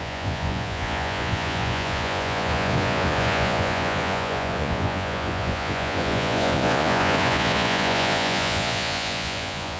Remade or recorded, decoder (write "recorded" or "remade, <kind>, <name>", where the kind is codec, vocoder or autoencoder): remade, vocoder, Vocos